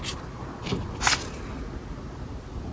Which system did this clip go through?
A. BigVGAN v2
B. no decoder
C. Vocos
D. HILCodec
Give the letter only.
B